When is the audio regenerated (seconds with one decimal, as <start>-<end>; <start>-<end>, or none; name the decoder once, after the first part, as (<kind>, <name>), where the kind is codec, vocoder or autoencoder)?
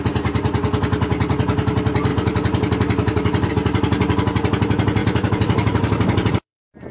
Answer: 2.1-3.5 (vocoder, BigVGAN v2); 5.0-6.9